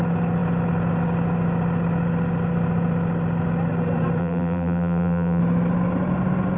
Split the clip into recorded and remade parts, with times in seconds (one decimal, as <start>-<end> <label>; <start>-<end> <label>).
0.0-4.2 recorded; 4.2-5.4 remade; 5.4-6.6 recorded

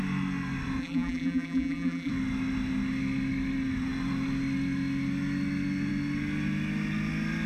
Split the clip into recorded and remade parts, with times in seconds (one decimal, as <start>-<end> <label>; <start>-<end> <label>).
0.0-0.8 recorded; 0.8-2.1 remade; 2.1-7.5 recorded

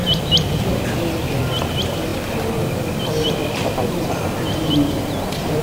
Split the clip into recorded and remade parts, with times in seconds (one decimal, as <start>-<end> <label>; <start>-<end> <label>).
0.0-0.8 remade; 0.8-2.1 recorded; 2.1-5.6 remade

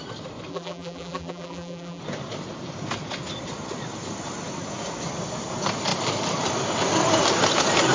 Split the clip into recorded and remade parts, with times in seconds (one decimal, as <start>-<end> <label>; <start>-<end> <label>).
0.0-0.5 recorded; 0.5-2.0 remade; 2.0-7.9 recorded

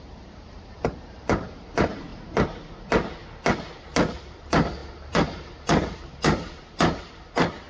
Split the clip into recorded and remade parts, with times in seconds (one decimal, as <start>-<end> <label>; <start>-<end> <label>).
0.0-2.1 remade; 2.1-4.2 recorded; 4.2-7.7 remade

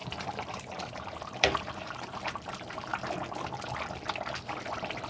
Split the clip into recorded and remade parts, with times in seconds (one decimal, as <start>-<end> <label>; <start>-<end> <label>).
0.0-2.9 remade; 2.9-4.4 recorded; 4.4-5.1 remade